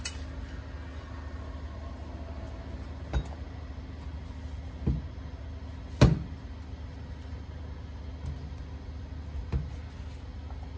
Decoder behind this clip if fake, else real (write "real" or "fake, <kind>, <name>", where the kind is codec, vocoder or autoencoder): real